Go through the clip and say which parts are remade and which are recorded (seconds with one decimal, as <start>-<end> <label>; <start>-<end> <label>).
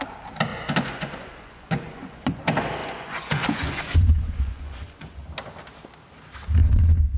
0.0-0.5 recorded; 0.5-2.4 remade; 2.4-2.8 recorded; 2.8-5.2 remade; 5.2-6.6 recorded; 6.6-7.2 remade